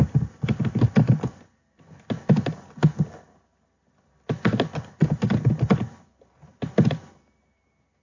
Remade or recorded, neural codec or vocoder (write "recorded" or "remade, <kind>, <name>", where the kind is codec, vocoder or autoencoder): recorded